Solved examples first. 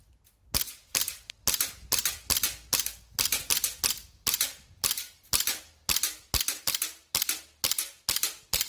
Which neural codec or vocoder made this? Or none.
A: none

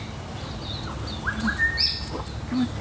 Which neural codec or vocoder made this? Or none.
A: none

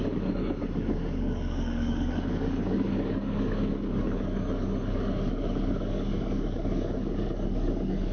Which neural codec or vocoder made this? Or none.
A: codec, DAC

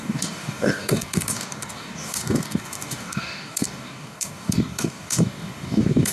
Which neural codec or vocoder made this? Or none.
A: codec, DAC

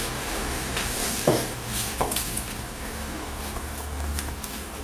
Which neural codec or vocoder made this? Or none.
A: codec, DAC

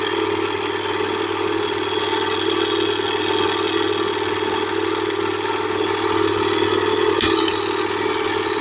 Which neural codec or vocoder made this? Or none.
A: none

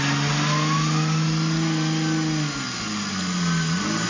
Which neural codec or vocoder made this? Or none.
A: none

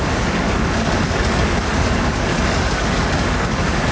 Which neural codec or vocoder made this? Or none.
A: codec, DAC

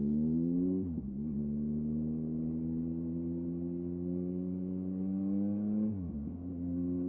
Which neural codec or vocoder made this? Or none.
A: codec, DAC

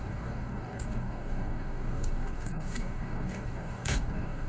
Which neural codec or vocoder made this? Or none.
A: codec, DAC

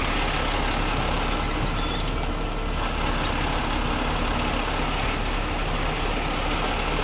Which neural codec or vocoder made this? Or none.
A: none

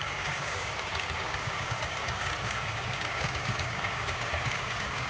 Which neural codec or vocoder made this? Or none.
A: codec, DAC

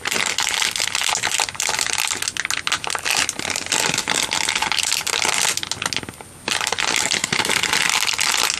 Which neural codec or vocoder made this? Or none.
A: none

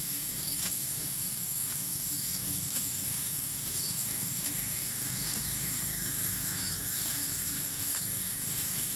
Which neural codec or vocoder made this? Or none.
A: codec, DAC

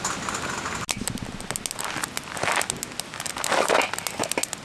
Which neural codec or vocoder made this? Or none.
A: none